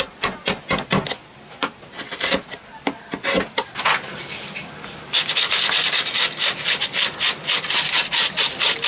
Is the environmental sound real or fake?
real